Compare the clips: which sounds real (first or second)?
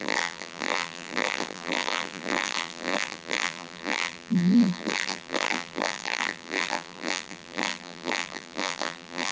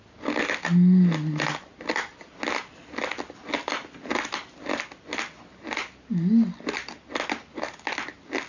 second